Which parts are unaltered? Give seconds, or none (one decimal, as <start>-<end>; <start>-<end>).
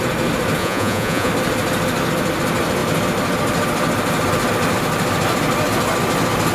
0.0-0.6; 1.3-6.5